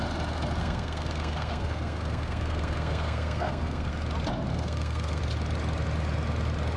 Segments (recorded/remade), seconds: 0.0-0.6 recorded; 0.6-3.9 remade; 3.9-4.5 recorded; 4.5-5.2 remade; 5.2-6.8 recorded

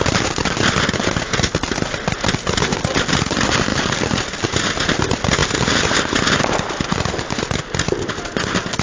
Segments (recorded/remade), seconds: 0.0-8.8 recorded

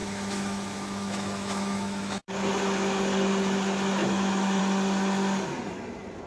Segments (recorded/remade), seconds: 0.0-2.3 remade; 2.3-4.0 recorded; 4.0-4.6 remade; 4.6-6.3 recorded

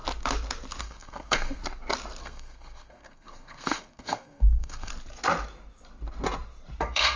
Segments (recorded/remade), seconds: 0.0-0.8 recorded; 0.8-1.6 remade; 1.6-2.2 recorded; 2.2-4.9 remade; 4.9-6.8 recorded; 6.8-7.2 remade

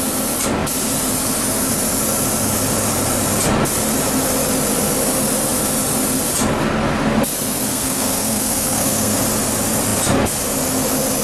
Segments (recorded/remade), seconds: 0.0-7.7 recorded; 7.7-9.2 remade; 9.2-11.2 recorded

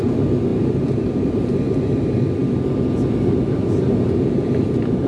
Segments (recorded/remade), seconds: 0.0-0.5 recorded; 0.5-1.6 remade; 1.6-5.1 recorded